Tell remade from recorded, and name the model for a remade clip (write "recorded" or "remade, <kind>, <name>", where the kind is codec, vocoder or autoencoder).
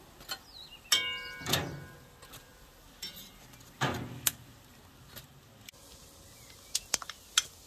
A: recorded